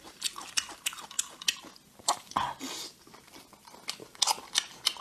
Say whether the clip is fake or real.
real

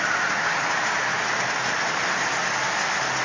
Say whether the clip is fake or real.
real